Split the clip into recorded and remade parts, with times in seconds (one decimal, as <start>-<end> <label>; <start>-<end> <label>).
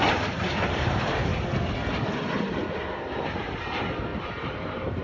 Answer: 0.0-1.3 remade; 1.3-2.0 recorded; 2.0-2.6 remade; 2.6-3.4 recorded; 3.4-5.0 remade